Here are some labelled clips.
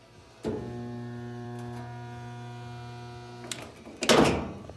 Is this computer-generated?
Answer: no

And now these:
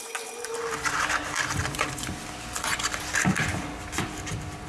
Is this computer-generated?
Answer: no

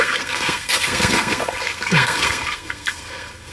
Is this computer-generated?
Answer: yes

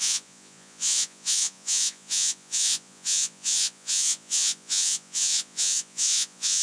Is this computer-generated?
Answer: yes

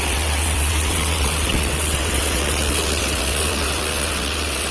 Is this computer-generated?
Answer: yes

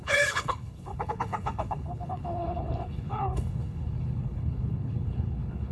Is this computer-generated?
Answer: yes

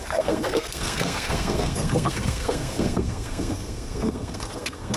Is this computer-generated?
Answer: yes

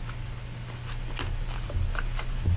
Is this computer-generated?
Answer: no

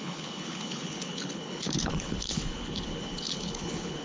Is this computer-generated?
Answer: yes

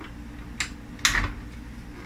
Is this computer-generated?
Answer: no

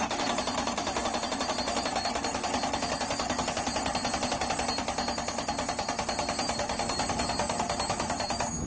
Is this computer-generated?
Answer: no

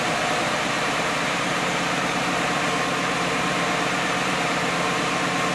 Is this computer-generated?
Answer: yes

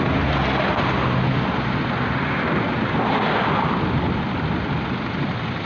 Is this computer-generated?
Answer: no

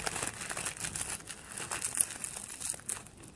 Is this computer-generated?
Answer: no